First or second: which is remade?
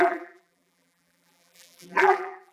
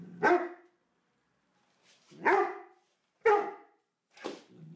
first